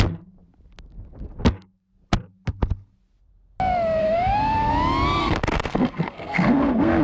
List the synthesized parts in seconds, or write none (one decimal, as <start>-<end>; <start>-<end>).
4.0-4.7; 5.2-7.0